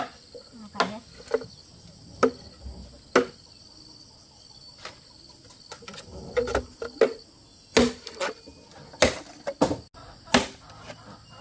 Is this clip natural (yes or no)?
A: yes